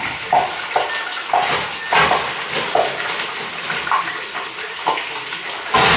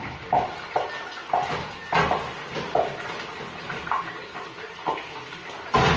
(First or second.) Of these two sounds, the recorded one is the second